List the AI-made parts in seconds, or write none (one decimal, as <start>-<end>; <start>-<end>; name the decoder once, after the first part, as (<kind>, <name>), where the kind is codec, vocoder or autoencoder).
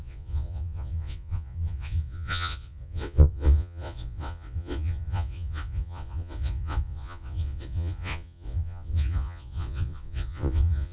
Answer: 0.0-10.9 (vocoder, Vocos)